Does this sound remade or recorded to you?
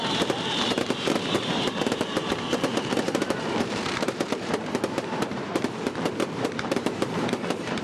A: remade